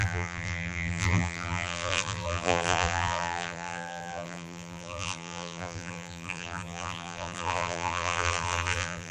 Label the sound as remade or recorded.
remade